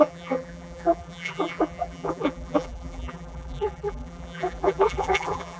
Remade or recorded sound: remade